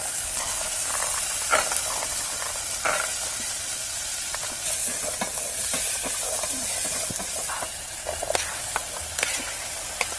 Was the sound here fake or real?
real